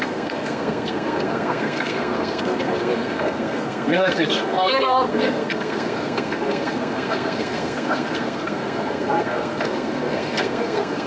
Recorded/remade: remade